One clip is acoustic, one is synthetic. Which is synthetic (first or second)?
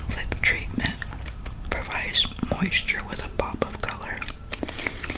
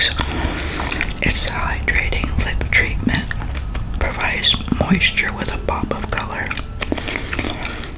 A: first